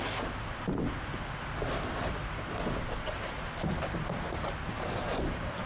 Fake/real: real